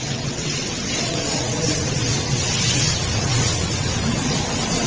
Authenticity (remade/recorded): remade